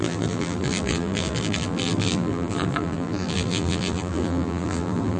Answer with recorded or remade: remade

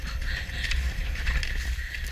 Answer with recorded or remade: recorded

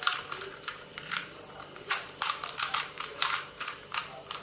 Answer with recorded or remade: remade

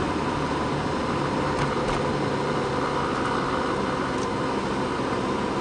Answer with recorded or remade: recorded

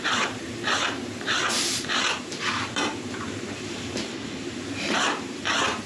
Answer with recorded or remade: remade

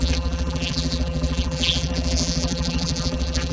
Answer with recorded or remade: remade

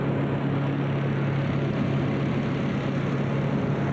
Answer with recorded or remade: recorded